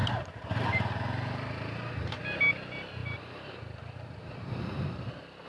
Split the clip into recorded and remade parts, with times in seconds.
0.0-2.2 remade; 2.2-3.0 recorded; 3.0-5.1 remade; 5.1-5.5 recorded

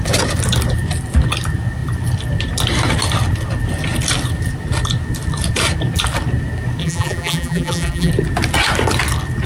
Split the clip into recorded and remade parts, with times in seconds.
0.0-6.8 recorded; 6.8-8.1 remade; 8.1-9.5 recorded

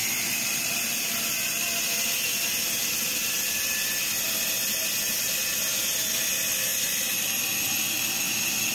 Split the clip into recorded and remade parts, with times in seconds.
0.0-6.7 recorded; 6.7-7.5 remade; 7.5-8.7 recorded